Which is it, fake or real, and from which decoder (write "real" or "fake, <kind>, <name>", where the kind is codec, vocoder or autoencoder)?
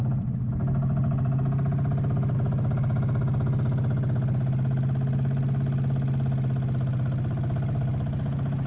real